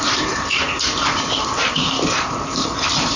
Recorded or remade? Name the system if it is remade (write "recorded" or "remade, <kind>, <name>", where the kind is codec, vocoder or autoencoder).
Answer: remade, vocoder, BigVGAN v2